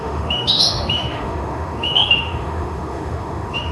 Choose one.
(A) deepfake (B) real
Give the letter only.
A